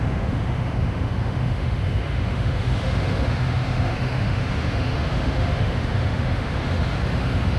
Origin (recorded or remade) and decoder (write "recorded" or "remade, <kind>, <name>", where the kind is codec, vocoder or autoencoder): remade, autoencoder, DAC-VAE